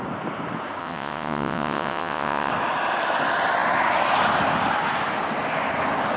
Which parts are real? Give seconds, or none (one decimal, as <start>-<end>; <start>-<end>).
0.0-0.8; 2.5-6.2